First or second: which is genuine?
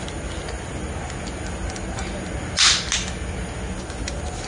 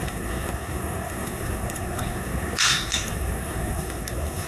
first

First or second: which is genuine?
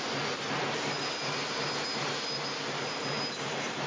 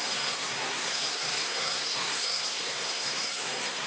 first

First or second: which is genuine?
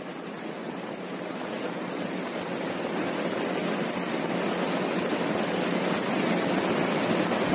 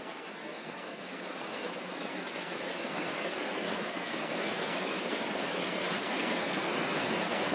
first